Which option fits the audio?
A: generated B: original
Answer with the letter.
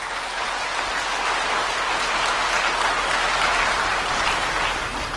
B